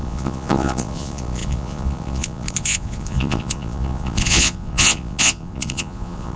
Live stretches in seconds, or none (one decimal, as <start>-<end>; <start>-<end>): none